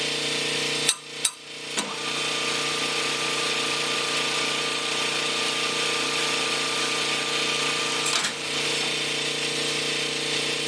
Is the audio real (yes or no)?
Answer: yes